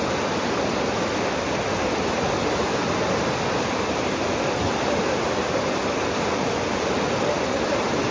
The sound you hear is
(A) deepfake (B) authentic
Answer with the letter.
B